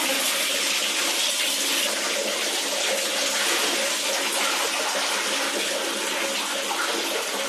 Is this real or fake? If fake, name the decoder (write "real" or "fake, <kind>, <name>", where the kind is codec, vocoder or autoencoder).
real